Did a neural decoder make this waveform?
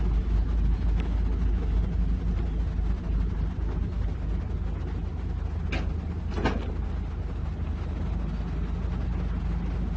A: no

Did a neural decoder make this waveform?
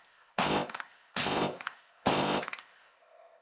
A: yes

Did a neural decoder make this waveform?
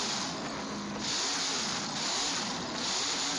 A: yes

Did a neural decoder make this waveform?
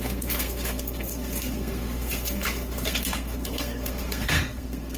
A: yes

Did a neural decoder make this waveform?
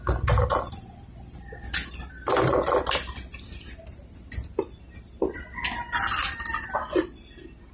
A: no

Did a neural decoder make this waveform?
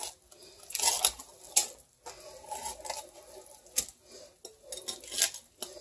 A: no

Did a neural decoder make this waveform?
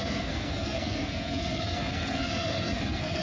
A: yes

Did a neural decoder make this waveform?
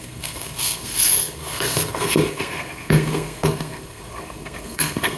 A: yes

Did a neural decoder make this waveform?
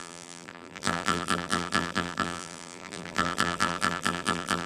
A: yes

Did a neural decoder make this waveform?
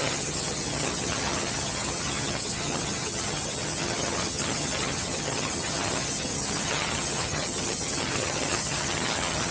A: yes